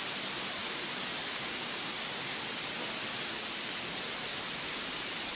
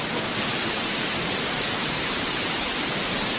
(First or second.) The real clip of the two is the first